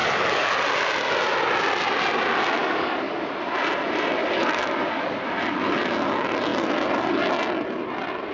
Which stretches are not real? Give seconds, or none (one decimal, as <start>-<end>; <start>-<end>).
0.0-0.5; 2.6-3.3; 4.2-5.2